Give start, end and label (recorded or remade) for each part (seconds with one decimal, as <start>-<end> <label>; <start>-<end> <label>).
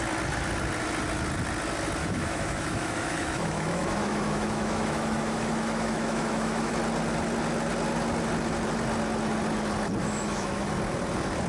0.0-2.0 recorded; 2.0-6.7 remade; 6.7-10.0 recorded; 10.0-10.7 remade; 10.7-11.5 recorded